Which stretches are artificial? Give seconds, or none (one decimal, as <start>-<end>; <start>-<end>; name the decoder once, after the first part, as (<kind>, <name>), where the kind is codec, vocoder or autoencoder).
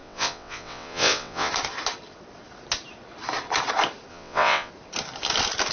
0.0-1.5 (vocoder, WaveNeXt); 4.1-4.7